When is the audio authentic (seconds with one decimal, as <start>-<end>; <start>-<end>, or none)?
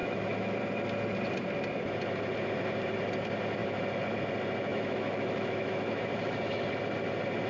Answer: 0.6-4.7; 6.6-7.5